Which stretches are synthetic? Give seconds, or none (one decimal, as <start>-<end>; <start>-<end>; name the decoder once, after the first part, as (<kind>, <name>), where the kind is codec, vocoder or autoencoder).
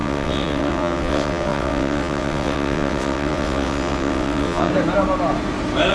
0.0-4.7 (vocoder, WaveNeXt)